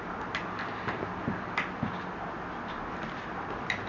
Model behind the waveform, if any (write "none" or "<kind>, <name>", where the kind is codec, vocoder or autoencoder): none